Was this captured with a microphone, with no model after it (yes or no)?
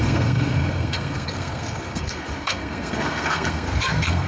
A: no